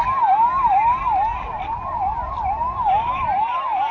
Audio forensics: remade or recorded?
recorded